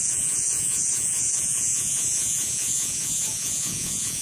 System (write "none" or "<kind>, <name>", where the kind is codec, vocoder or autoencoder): vocoder, Vocos